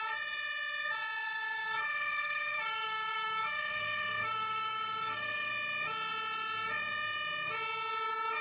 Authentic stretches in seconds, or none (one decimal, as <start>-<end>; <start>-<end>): 0.0-1.2; 5.5-8.4